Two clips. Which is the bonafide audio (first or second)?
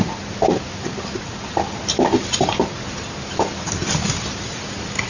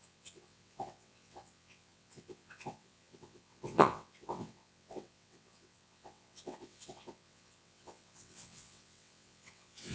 first